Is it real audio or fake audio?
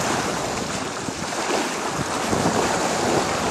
fake